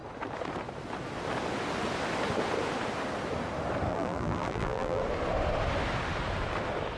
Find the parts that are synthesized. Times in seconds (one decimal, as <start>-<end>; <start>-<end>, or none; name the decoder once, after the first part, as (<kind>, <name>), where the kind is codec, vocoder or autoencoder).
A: 3.9-5.0 (vocoder, BigVGAN v2)